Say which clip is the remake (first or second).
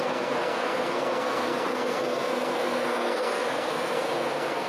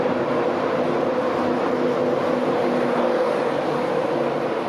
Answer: first